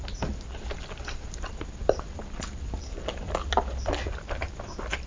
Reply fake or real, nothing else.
real